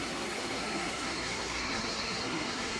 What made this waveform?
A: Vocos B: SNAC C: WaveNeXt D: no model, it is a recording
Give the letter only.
B